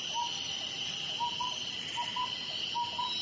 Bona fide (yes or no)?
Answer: yes